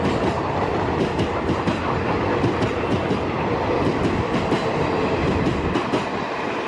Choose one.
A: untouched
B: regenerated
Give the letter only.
A